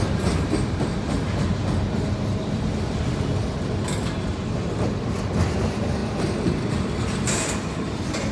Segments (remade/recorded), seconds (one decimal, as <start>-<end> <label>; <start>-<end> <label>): 0.0-1.5 remade; 1.5-5.4 recorded; 5.4-6.0 remade; 6.0-6.7 recorded; 6.7-8.3 remade